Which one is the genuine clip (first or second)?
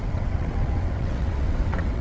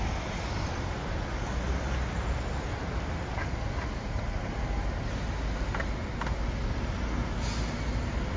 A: second